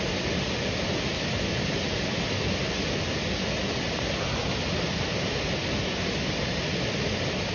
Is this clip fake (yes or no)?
no